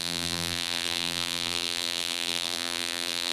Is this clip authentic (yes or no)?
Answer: no